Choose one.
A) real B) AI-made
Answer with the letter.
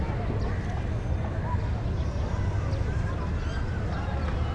A